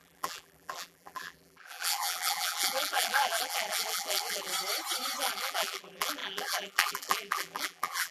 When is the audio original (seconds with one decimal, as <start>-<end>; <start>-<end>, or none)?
4.5-5.2